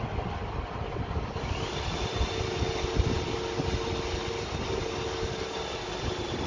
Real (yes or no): yes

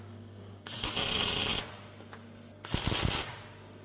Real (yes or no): yes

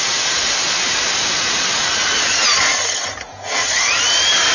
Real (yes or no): yes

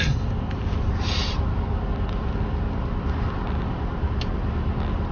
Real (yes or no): yes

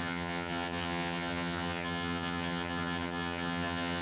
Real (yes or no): no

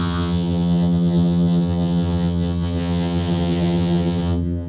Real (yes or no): no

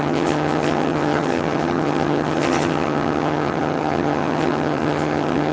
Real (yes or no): no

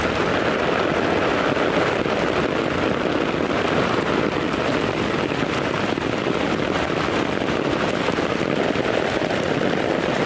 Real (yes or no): yes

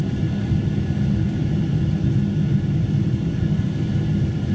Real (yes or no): yes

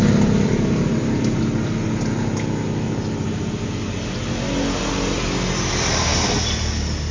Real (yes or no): yes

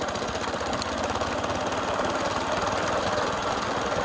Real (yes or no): yes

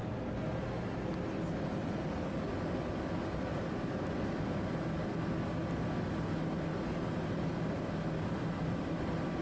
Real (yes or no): yes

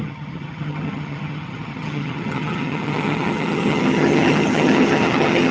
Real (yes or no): no